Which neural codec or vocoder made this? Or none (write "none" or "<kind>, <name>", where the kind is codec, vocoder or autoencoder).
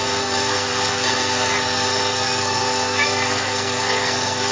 codec, SNAC